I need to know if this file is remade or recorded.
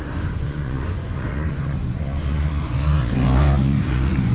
remade